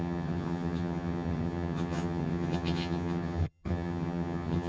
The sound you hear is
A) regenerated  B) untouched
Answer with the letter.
A